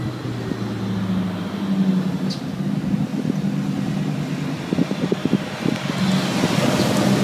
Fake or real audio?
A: real